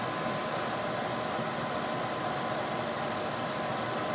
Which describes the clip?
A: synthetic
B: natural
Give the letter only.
B